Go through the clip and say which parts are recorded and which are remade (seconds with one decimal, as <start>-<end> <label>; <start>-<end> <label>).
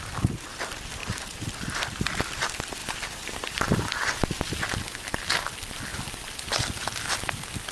0.0-1.0 recorded; 1.0-2.0 remade; 2.0-2.8 recorded; 2.8-3.8 remade; 3.8-5.9 recorded; 5.9-6.5 remade; 6.5-7.7 recorded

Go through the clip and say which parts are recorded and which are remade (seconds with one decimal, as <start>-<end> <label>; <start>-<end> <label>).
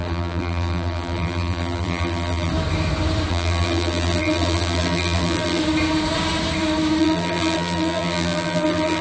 0.0-2.5 remade; 2.5-3.3 recorded; 3.3-5.6 remade; 5.6-7.0 recorded; 7.0-9.0 remade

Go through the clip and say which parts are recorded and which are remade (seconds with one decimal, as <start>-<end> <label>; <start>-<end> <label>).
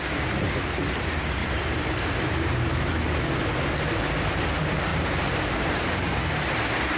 0.0-1.4 recorded; 1.4-2.9 remade; 2.9-4.9 recorded; 4.9-5.8 remade; 5.8-7.0 recorded